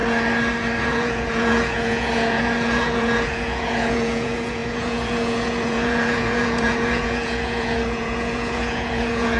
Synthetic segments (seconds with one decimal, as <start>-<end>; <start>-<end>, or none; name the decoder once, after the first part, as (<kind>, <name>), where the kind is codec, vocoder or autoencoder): 0.8-9.4 (vocoder, Vocos)